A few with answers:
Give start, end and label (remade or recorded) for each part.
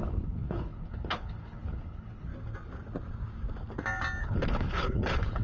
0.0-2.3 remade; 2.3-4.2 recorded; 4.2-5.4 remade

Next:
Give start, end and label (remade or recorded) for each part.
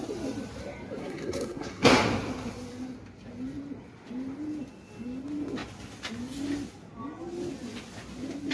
0.0-1.0 recorded; 1.0-2.0 remade; 2.0-8.5 recorded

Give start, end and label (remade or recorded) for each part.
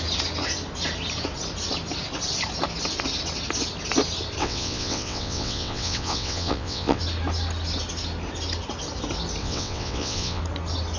0.0-4.4 recorded; 4.4-7.0 remade; 7.0-9.4 recorded; 9.4-10.4 remade; 10.4-11.0 recorded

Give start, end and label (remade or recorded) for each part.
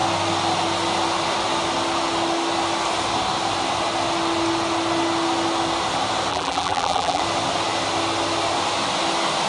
0.0-6.3 recorded; 6.3-7.2 remade; 7.2-9.5 recorded